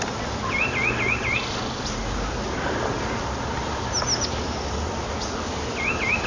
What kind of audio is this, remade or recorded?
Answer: recorded